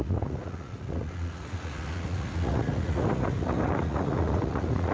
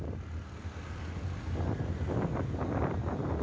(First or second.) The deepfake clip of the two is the first